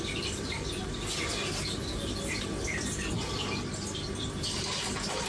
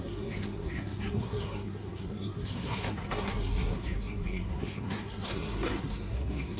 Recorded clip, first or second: first